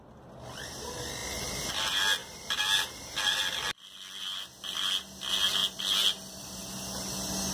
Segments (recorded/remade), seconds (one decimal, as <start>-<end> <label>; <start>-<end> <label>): 0.0-7.5 recorded